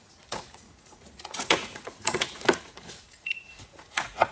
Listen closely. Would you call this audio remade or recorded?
remade